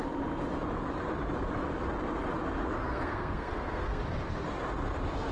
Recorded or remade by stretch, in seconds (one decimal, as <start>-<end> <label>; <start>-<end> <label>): 0.0-2.8 recorded; 2.8-4.0 remade; 4.0-5.3 recorded